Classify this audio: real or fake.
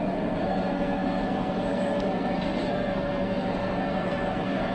fake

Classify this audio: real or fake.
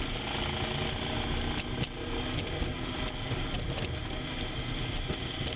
real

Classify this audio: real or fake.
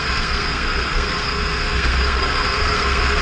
fake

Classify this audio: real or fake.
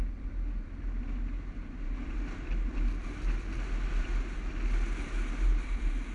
real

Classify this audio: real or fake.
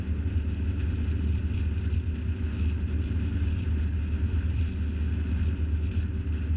real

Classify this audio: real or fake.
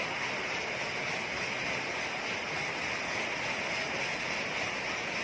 real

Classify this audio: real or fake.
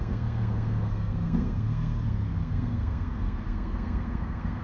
fake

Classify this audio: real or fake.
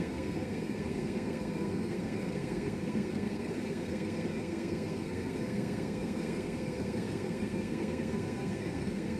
fake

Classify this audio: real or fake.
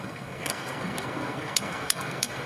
fake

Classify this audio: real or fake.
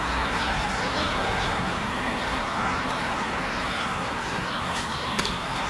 fake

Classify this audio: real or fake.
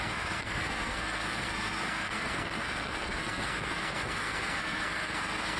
fake